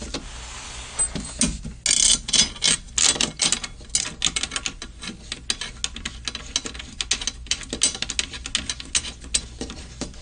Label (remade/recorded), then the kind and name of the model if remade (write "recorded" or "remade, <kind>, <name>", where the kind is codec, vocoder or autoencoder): recorded